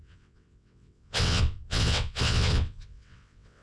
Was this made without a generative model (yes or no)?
no